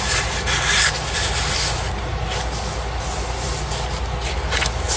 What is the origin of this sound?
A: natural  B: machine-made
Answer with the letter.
A